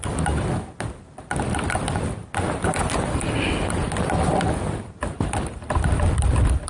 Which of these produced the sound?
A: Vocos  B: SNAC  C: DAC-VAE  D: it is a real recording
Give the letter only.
D